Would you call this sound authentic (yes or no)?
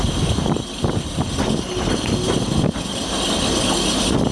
yes